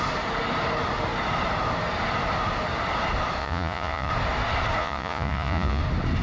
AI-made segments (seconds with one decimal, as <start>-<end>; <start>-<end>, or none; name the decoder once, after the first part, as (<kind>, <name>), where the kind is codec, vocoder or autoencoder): 3.4-4.1 (vocoder, Vocos); 4.8-5.8

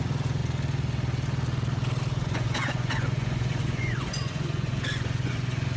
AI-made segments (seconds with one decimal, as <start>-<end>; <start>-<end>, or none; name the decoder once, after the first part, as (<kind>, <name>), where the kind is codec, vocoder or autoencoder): 0.0-0.4 (vocoder, Vocos); 2.1-5.8

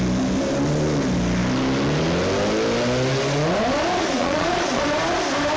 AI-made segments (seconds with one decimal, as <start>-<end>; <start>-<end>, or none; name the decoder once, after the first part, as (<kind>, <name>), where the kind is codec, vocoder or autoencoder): 4.0-4.8 (vocoder, Vocos)